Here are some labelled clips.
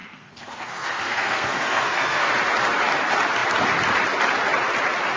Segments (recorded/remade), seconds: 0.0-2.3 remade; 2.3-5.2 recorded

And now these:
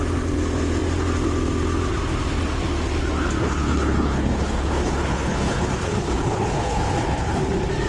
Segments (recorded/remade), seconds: 0.0-3.4 recorded; 3.4-7.5 remade; 7.5-7.9 recorded

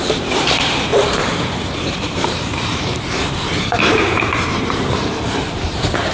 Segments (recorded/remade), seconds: 0.0-6.1 remade

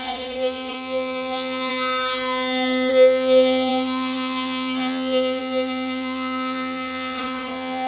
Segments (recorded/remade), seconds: 0.0-1.7 remade; 1.7-2.9 recorded; 2.9-7.9 remade